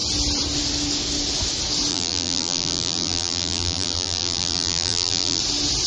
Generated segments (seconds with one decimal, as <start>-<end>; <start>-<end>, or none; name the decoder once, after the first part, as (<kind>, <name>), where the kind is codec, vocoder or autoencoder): 1.9-5.4 (vocoder, BigVGAN v2)